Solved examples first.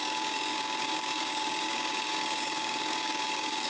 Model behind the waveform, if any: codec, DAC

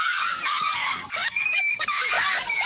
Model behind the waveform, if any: codec, DAC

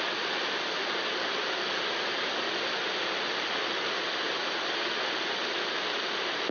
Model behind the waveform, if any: none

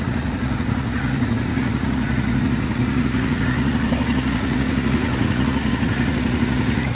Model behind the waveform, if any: vocoder, Vocos